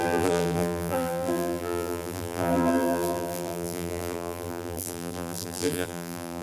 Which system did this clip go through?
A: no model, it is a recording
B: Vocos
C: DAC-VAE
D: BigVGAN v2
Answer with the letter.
D